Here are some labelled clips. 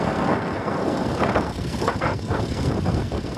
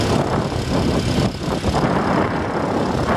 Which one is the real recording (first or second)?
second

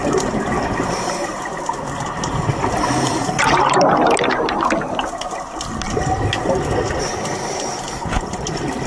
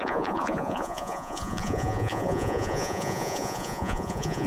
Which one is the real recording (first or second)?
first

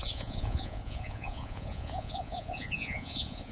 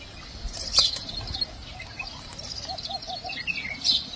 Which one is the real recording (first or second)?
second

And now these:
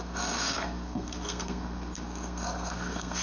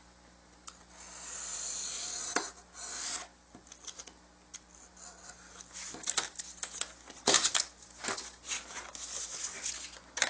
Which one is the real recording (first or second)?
second